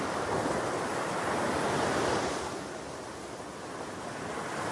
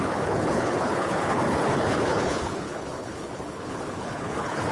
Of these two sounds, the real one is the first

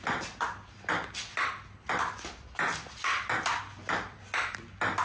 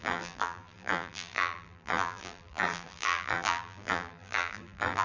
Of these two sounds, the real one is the first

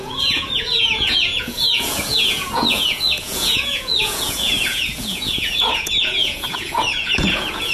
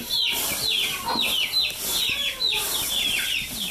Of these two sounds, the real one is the second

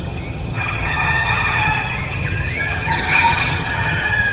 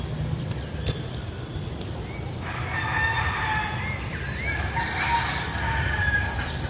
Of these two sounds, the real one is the second